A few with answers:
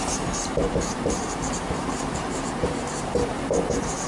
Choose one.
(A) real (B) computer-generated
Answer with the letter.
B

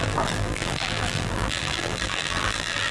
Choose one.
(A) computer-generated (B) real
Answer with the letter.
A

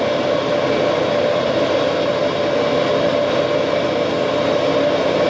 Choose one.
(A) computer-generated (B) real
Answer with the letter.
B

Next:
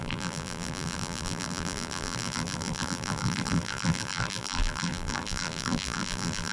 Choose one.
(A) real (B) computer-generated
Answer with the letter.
B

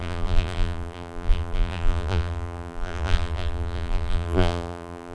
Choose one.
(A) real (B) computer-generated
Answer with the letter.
B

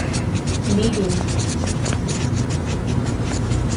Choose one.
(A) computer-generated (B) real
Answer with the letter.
A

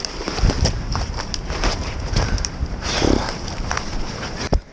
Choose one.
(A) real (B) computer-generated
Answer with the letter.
B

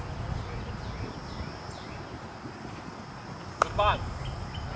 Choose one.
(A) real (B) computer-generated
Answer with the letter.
A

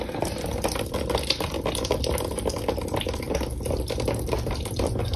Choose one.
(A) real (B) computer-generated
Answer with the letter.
B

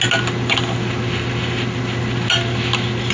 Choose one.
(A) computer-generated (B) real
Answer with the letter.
B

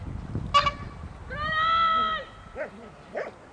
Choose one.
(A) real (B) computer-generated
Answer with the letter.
A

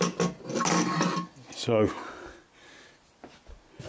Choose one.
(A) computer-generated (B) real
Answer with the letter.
B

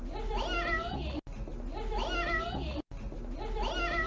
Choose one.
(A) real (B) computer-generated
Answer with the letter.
A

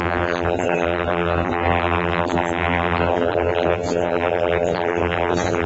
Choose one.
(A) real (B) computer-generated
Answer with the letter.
B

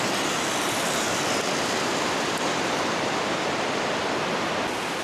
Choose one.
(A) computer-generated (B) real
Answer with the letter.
A